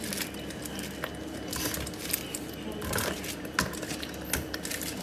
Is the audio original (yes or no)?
yes